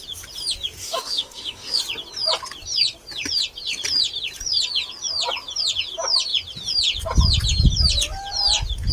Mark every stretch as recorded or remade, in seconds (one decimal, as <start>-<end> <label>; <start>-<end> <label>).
0.0-0.8 recorded; 0.8-1.8 remade; 1.8-8.9 recorded